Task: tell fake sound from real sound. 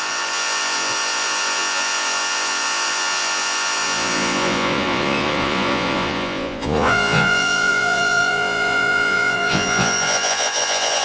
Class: fake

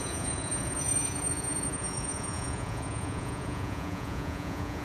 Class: fake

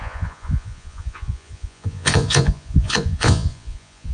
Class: fake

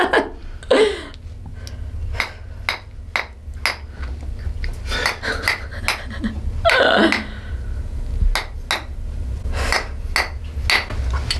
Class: real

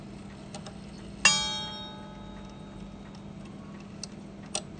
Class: real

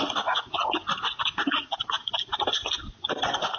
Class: real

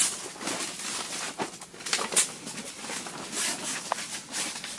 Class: real